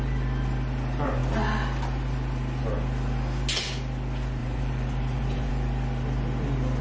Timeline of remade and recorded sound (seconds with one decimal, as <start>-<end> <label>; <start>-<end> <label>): 0.0-4.4 recorded; 4.4-5.5 remade; 5.5-6.8 recorded